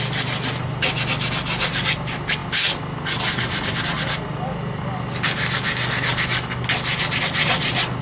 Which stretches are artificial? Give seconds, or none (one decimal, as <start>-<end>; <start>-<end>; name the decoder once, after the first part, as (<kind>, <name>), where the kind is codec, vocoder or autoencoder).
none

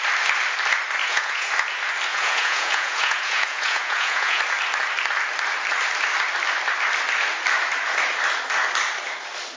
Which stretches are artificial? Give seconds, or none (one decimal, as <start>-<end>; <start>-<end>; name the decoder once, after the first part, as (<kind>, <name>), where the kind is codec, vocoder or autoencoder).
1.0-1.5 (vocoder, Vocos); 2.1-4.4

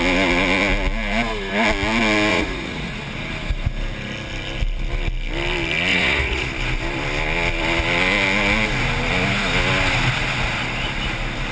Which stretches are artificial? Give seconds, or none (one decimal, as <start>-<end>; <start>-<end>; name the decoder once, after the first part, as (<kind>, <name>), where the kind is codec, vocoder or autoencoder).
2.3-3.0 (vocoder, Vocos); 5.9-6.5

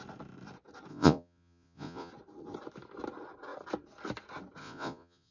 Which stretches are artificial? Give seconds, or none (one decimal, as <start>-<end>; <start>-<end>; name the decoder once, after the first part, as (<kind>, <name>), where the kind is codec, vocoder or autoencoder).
0.9-2.1 (vocoder, Vocos); 4.6-5.3

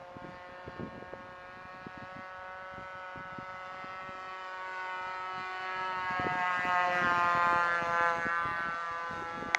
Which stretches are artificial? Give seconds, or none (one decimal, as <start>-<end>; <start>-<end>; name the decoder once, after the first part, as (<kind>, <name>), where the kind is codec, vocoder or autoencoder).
none